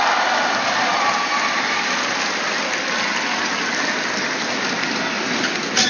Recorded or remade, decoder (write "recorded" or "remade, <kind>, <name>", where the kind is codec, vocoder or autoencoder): recorded